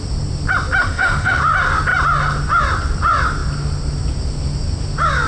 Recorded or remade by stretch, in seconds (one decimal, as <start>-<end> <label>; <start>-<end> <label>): 0.0-0.8 recorded; 0.8-1.4 remade; 1.4-5.3 recorded